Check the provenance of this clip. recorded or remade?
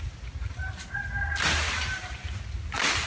recorded